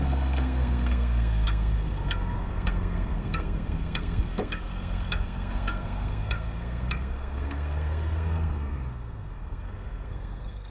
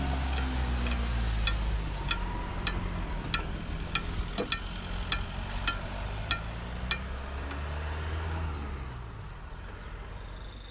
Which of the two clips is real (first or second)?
second